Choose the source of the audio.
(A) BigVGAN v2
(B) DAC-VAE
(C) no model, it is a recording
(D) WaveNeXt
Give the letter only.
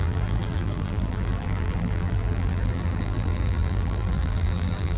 A